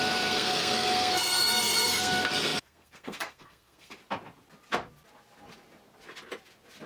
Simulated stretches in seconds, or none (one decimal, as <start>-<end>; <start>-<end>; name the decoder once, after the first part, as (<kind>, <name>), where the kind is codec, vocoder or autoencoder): 0.0-4.0 (codec, SNAC)